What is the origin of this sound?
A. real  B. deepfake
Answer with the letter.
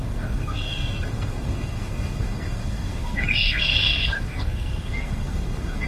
B